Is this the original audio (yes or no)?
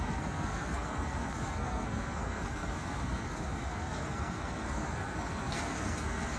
no